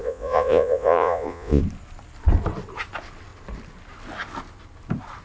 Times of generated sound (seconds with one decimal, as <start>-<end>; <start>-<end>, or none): 0.0-1.6